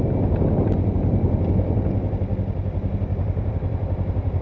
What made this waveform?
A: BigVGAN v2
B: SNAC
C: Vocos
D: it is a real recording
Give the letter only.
D